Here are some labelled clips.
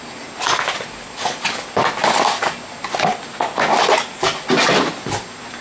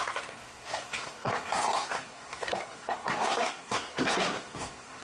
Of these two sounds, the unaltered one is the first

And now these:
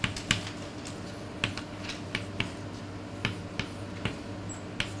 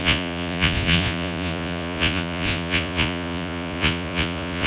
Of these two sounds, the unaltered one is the first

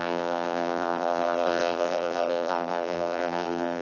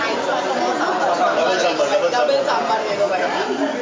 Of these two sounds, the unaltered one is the second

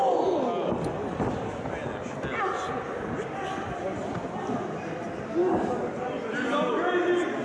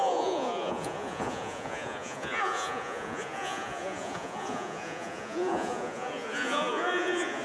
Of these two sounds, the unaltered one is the first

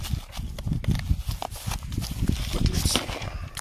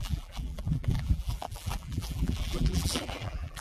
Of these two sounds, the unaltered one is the first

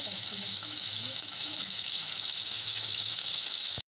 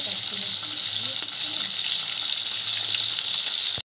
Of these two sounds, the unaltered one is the second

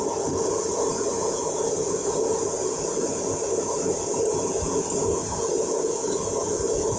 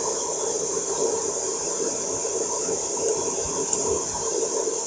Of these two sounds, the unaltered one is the second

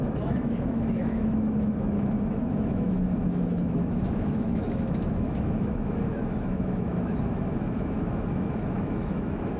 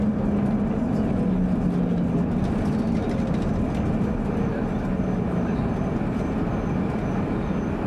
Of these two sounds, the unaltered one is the second